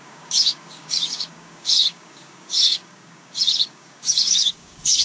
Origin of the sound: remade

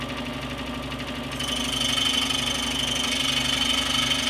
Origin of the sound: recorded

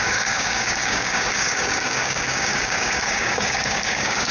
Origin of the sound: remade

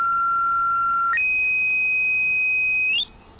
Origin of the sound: recorded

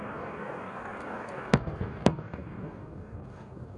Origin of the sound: remade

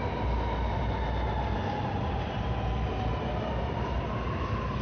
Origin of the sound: recorded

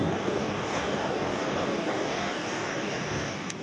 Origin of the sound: remade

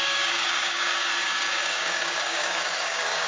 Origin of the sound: remade